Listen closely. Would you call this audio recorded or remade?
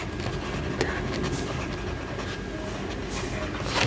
recorded